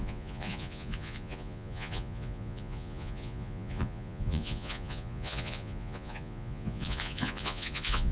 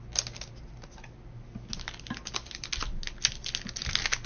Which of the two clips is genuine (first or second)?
second